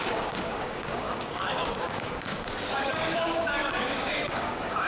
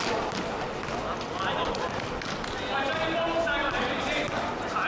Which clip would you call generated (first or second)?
first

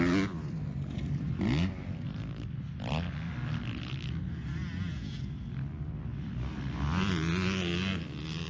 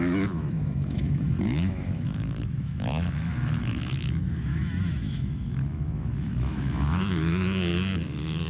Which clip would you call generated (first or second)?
second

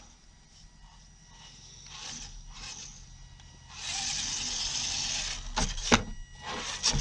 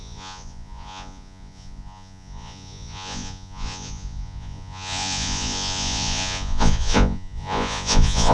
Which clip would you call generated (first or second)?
second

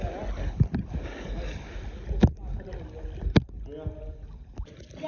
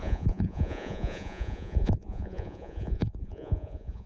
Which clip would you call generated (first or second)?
second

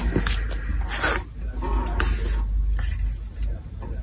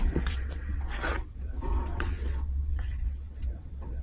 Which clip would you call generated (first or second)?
second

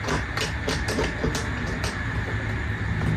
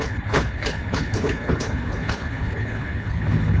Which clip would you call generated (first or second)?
second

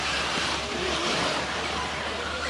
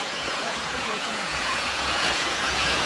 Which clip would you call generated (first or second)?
second